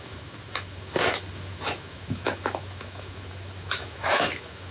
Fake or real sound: fake